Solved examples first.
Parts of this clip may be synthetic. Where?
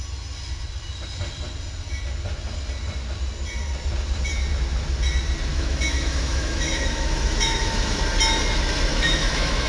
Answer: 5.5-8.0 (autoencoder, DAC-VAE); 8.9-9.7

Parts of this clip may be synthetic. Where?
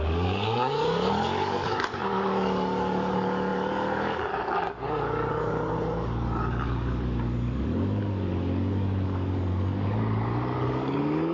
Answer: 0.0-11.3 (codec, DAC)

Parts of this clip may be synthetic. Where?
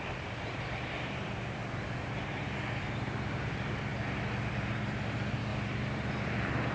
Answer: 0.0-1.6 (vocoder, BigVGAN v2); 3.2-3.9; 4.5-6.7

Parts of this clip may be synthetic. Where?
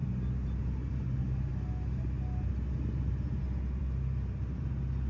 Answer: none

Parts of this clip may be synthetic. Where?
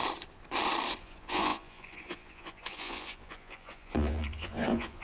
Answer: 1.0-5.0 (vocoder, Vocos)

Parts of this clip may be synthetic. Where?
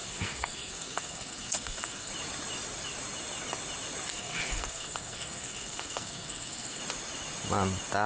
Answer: 0.0-2.1 (codec, SNAC); 4.1-6.8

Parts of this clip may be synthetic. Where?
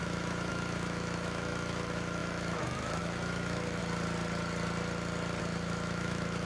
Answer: 0.0-3.8 (autoencoder, DAC-VAE); 5.4-6.5